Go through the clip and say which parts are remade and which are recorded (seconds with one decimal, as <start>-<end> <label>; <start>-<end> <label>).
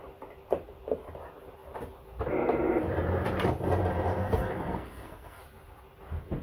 0.0-4.1 recorded; 4.1-5.4 remade; 5.4-6.4 recorded